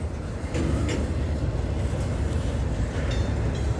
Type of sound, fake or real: real